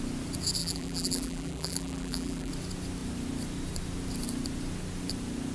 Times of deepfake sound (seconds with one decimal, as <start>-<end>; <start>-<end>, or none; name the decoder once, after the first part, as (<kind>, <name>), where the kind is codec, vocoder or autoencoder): 0.6-2.5 (vocoder, BigVGAN v2)